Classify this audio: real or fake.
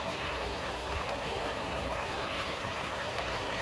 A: fake